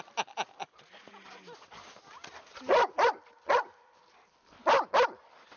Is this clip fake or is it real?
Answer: real